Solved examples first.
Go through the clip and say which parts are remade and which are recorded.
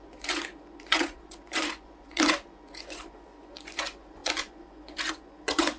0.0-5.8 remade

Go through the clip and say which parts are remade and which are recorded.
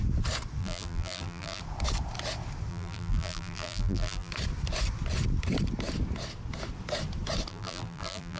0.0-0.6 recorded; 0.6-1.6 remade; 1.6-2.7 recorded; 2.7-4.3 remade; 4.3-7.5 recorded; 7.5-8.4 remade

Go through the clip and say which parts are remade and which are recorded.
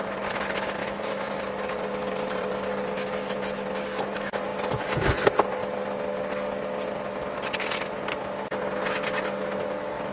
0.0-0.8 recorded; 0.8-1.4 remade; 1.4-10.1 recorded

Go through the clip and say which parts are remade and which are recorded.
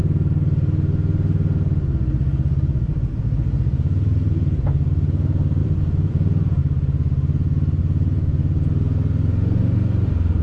0.0-3.7 recorded; 3.7-4.9 remade; 4.9-5.6 recorded; 5.6-6.6 remade; 6.6-7.8 recorded; 7.8-8.7 remade; 8.7-10.4 recorded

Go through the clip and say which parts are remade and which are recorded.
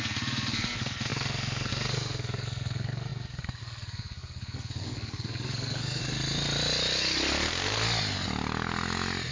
0.0-6.0 remade; 6.0-9.3 recorded